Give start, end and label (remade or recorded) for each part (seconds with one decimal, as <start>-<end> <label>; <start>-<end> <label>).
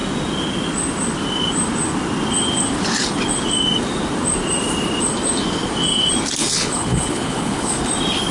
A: 0.0-6.4 recorded; 6.4-7.7 remade; 7.7-8.3 recorded